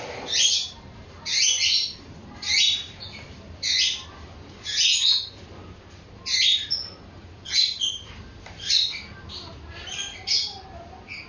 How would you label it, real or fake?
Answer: real